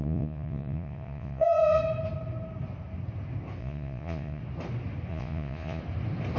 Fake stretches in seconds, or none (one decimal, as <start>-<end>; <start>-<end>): 0.0-1.8; 3.6-4.4; 5.1-5.8